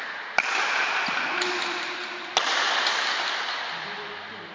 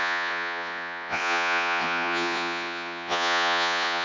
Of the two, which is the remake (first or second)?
second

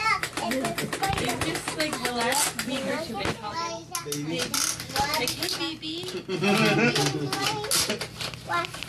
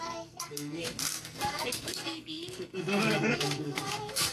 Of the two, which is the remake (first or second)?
second